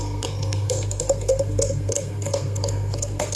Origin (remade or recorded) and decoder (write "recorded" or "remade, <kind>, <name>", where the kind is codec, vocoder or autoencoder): remade, codec, SNAC